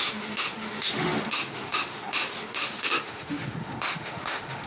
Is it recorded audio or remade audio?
remade